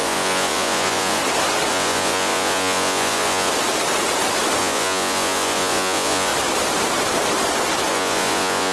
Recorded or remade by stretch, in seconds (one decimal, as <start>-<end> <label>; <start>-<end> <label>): 0.0-1.2 remade; 1.2-1.7 recorded; 1.7-3.5 remade; 3.5-4.6 recorded; 4.6-6.3 remade; 6.3-7.9 recorded; 7.9-8.7 remade